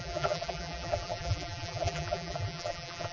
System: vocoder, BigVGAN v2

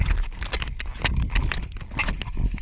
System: none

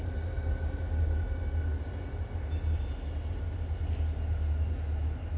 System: none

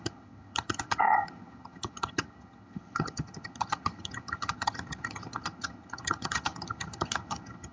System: vocoder, HiFi-GAN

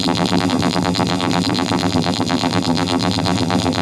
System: vocoder, BigVGAN v2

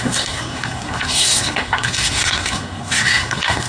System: codec, SNAC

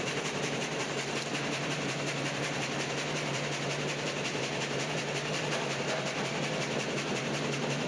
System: vocoder, BigVGAN v2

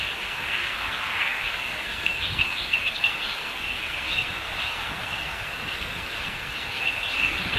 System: codec, SNAC